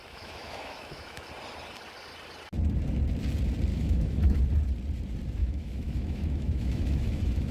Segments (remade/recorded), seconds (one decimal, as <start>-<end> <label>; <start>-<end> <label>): 0.0-1.3 remade; 1.3-3.7 recorded; 3.7-4.4 remade; 4.4-5.4 recorded; 5.4-7.5 remade